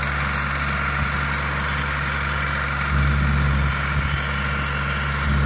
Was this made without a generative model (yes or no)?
yes